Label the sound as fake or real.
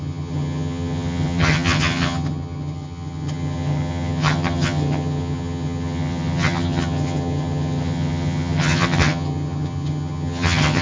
fake